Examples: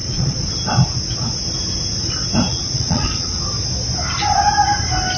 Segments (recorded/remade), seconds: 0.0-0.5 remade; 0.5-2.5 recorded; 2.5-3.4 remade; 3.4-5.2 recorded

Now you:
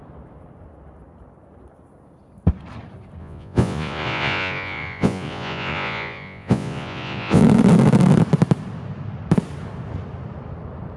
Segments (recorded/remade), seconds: 0.0-3.2 recorded; 3.2-7.4 remade; 7.4-11.0 recorded

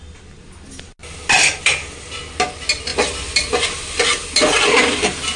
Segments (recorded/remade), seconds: 0.0-5.4 recorded